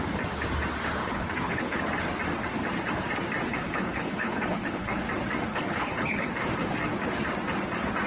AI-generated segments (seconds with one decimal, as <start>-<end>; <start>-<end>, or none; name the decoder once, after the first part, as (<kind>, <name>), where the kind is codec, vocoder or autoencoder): 1.0-1.8 (codec, HILCodec); 3.5-4.9; 5.5-6.3